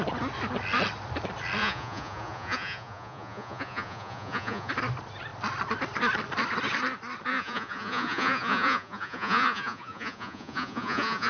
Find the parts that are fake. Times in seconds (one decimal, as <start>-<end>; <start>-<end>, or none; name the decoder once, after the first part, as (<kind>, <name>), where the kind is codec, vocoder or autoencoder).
1.6-4.7 (vocoder, Vocos); 7.3-11.3